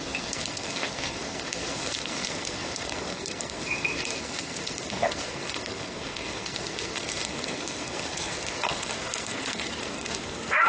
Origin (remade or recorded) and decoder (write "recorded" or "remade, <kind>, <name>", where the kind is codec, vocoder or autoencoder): remade, codec, SNAC